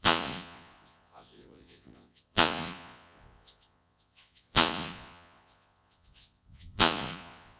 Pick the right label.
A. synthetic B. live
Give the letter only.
A